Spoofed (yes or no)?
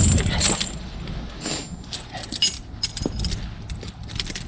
no